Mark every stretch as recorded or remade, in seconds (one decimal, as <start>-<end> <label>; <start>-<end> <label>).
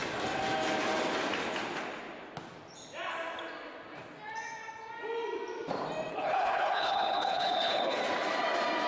0.0-6.1 recorded; 6.1-8.0 remade; 8.0-8.9 recorded